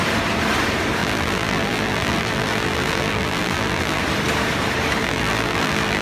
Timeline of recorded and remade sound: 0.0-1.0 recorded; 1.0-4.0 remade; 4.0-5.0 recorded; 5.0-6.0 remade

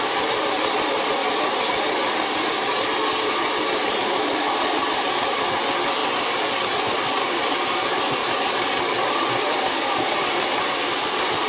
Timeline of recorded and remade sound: 0.0-1.2 remade; 1.2-3.9 recorded; 3.9-6.0 remade; 6.0-6.8 recorded; 6.8-8.2 remade; 8.2-9.3 recorded; 9.3-11.5 remade

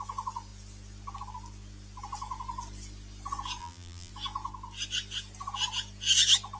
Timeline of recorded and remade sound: 0.0-3.6 recorded; 3.6-4.1 remade; 4.1-6.6 recorded

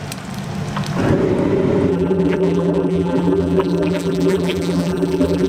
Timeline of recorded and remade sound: 0.0-1.9 recorded; 1.9-5.5 remade

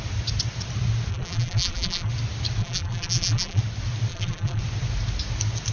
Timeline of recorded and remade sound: 0.0-1.1 recorded; 1.1-2.1 remade; 2.1-2.6 recorded; 2.6-3.6 remade; 3.6-4.1 recorded; 4.1-4.6 remade; 4.6-5.7 recorded